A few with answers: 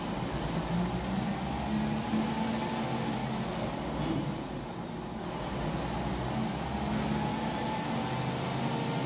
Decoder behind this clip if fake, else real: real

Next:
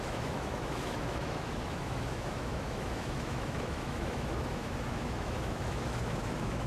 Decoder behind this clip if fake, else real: fake, autoencoder, DAC-VAE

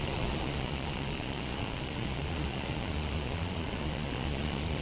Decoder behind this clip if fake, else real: fake, vocoder, Vocos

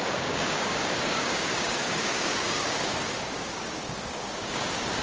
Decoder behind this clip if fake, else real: fake, codec, DAC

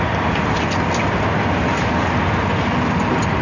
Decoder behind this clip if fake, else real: real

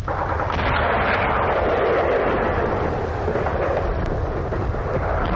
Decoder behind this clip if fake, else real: real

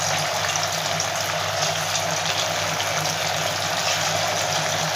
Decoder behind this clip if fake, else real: real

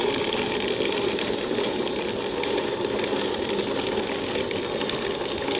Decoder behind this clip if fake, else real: real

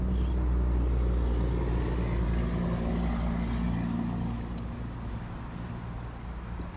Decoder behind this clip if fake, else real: real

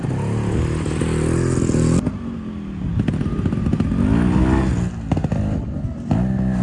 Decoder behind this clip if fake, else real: real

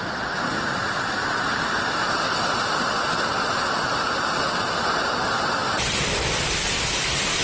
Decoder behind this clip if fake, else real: real